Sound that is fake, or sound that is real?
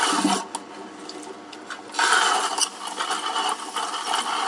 real